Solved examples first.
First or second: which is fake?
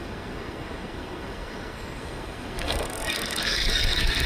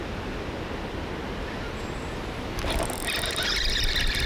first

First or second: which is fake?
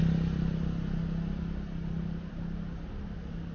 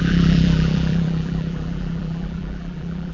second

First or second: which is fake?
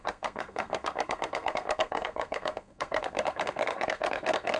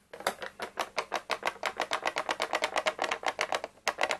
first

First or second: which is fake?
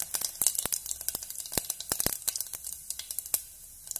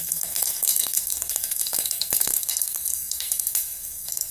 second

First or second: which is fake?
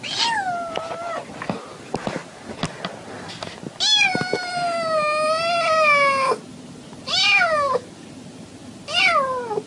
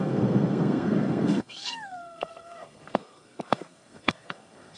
second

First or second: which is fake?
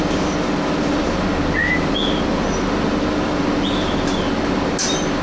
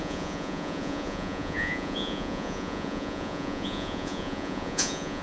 second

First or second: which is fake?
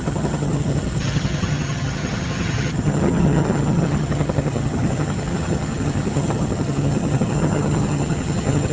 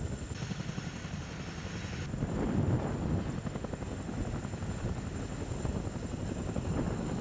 first